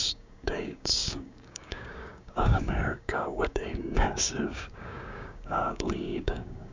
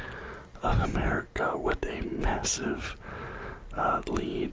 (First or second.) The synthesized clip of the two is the first